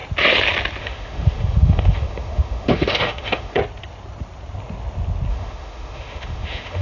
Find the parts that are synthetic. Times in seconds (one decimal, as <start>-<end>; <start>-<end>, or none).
0.8-3.6; 5.3-6.8